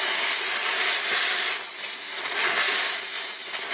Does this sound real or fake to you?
real